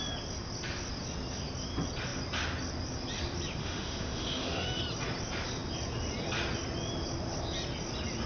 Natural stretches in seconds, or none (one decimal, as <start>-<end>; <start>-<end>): 0.0-3.6; 4.8-8.3